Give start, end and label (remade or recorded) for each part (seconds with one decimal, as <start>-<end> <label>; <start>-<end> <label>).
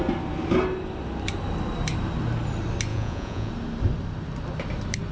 0.0-2.9 recorded; 2.9-3.5 remade; 3.5-5.1 recorded